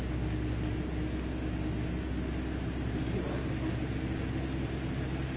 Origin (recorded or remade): recorded